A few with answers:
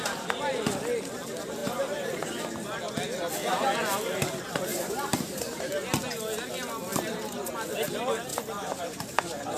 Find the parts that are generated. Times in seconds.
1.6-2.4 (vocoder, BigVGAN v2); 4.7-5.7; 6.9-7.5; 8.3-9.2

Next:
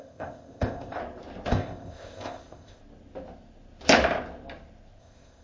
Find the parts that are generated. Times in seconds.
0.0-1.0 (codec, ZipCodec); 1.5-2.8; 5.0-5.4

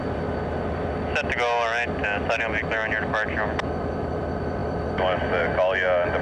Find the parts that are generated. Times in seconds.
none

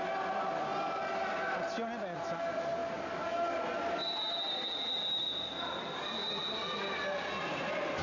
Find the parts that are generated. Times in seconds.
none

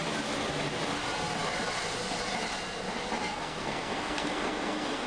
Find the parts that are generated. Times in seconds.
3.2-5.1 (codec, SNAC)

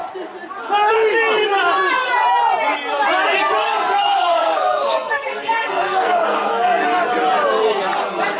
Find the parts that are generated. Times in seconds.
3.6-7.0 (codec, SNAC)

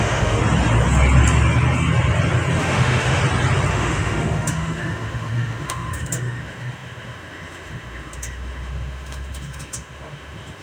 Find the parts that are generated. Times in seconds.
0.0-0.4 (autoencoder, DAC-VAE); 2.6-3.2; 3.7-10.6